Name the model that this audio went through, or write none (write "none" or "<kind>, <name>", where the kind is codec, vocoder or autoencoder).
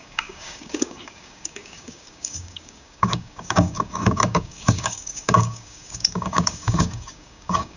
codec, DAC